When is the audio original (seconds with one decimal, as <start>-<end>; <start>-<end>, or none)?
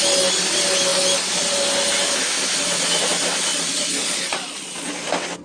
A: 0.0-3.5; 4.9-5.4